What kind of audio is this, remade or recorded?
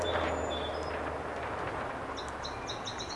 recorded